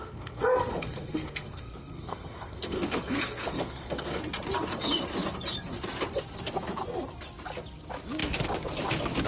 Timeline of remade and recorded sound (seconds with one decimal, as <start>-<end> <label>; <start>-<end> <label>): 0.0-4.2 remade; 4.2-9.3 recorded